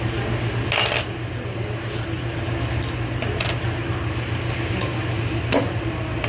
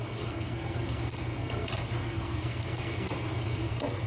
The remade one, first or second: second